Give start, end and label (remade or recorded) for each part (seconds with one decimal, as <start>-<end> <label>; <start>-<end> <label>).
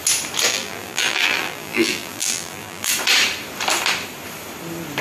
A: 0.0-0.5 recorded; 0.5-2.9 remade; 2.9-5.0 recorded